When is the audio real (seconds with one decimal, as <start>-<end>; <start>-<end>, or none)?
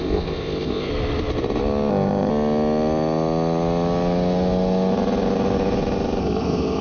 0.9-1.9; 2.3-6.2